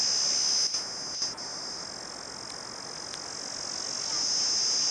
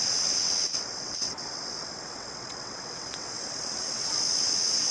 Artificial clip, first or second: second